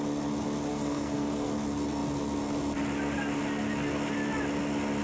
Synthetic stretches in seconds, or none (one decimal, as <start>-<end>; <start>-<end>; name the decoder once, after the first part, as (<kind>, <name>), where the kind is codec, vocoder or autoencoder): 0.7-1.5 (codec, SNAC)